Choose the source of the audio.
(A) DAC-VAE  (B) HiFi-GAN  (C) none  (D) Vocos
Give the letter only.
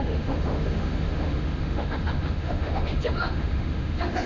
A